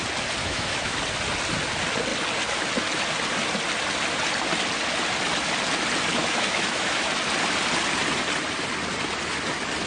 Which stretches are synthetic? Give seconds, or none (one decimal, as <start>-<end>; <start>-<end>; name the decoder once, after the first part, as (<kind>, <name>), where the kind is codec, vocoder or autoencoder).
0.4-1.0 (autoencoder, DAC-VAE); 6.2-7.1